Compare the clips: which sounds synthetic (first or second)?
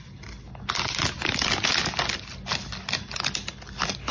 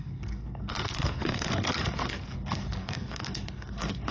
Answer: second